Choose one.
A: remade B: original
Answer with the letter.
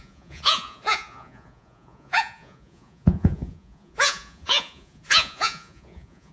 A